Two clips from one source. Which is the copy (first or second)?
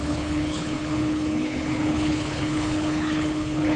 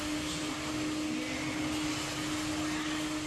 first